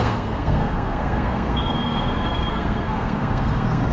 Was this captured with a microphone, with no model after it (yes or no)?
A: no